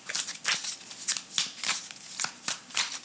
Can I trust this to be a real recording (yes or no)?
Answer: yes